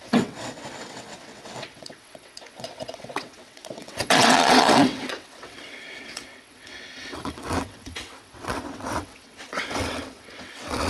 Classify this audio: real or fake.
fake